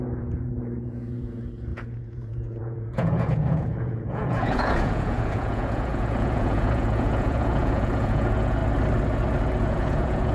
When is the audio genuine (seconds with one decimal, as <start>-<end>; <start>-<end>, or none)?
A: 8.6-9.7